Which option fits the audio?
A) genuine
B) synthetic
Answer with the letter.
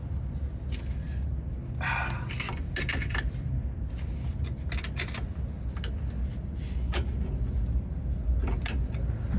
A